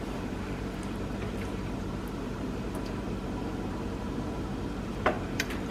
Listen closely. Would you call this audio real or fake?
fake